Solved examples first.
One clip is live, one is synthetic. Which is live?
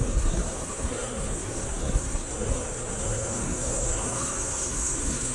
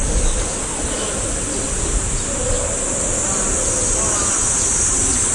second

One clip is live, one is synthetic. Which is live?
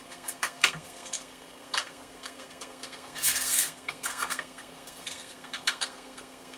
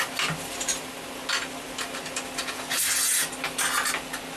second